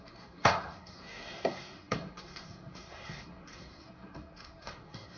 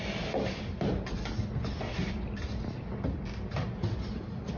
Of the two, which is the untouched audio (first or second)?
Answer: second